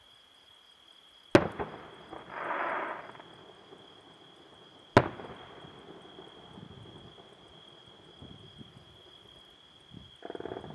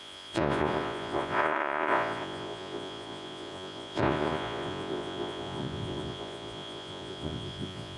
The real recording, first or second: first